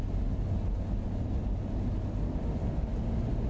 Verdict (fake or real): real